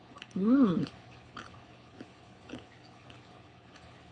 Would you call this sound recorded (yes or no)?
no